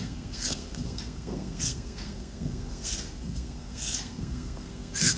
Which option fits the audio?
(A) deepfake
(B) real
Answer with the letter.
A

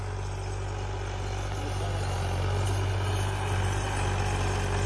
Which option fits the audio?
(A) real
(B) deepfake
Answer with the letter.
A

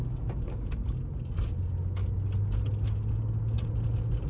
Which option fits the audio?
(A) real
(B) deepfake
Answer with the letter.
A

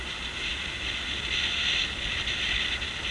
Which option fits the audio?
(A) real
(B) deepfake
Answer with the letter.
A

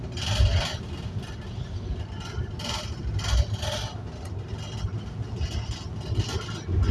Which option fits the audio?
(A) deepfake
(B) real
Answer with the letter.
B